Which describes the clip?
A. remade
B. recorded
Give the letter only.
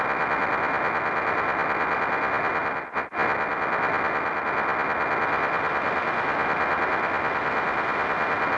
B